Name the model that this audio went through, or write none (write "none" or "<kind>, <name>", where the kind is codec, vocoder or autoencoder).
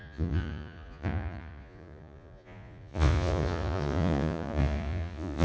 vocoder, Vocos